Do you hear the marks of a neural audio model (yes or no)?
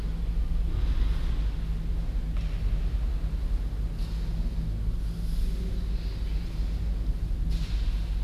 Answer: no